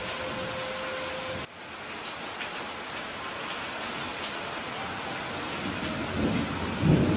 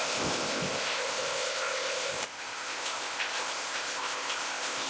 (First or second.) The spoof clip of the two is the second